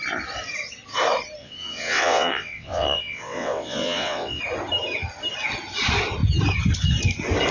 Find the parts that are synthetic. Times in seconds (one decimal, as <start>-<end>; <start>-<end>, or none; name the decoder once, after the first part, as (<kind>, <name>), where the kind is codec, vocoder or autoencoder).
1.4-4.4 (vocoder, WaveNeXt)